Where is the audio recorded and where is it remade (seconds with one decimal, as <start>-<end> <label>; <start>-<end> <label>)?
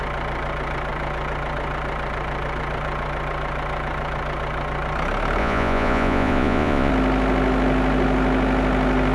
0.0-5.4 recorded; 5.4-6.9 remade; 6.9-9.1 recorded